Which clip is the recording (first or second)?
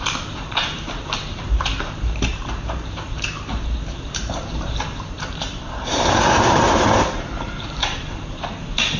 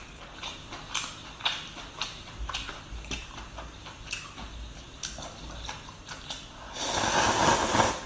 second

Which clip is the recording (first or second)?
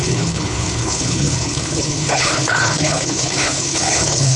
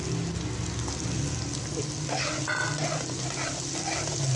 second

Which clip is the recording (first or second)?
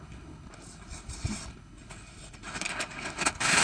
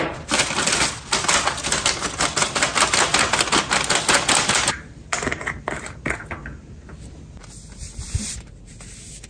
second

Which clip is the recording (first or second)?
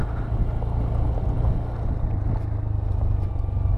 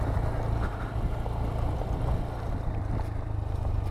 first